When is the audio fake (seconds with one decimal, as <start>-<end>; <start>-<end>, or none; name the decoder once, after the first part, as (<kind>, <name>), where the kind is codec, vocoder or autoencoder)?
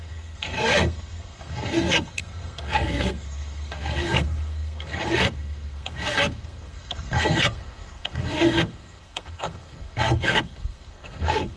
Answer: 0.0-11.6 (codec, SNAC)